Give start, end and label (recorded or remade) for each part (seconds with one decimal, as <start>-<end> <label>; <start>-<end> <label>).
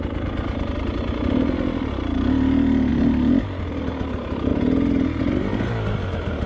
0.0-6.5 recorded